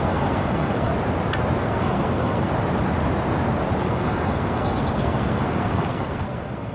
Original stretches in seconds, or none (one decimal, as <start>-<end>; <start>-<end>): 0.9-1.6; 2.5-3.8